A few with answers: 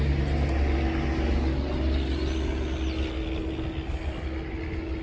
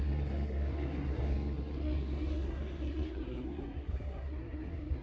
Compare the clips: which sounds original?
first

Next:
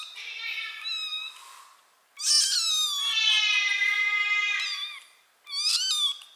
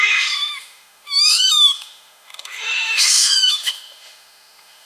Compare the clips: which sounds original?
first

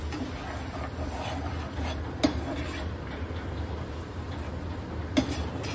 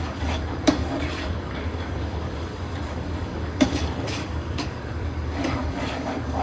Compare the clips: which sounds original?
first